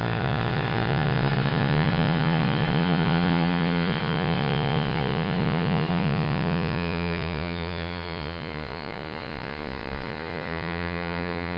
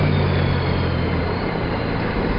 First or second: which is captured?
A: second